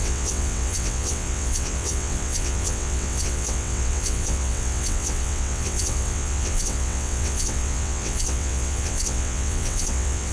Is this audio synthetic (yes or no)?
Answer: yes